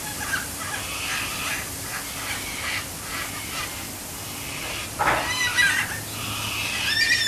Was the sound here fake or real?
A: real